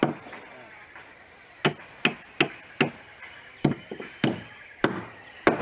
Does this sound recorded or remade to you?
recorded